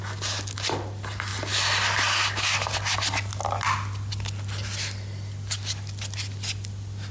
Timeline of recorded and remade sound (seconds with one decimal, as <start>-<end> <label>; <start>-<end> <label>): 0.0-7.1 recorded